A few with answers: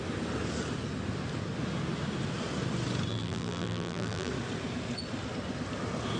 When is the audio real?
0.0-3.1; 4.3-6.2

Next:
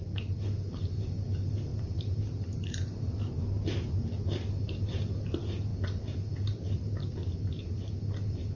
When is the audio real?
0.0-1.7; 3.1-8.6

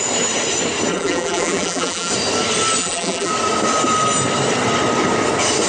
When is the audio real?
0.0-0.9; 2.1-2.8; 3.3-5.7